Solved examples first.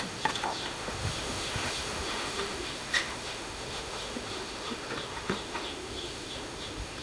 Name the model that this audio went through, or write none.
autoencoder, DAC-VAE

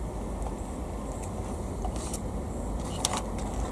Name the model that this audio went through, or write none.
none